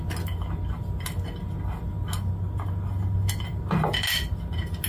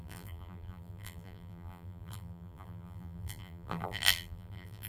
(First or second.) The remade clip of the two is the second